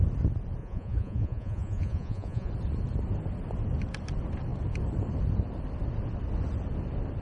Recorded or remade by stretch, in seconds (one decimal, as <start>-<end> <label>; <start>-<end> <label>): 0.0-0.6 recorded; 0.6-2.5 remade; 2.5-7.2 recorded